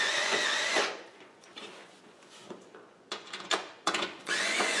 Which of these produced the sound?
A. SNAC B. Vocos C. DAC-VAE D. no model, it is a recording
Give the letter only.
B